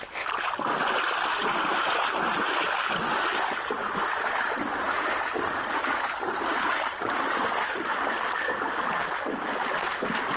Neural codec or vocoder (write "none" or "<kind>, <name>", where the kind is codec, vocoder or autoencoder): none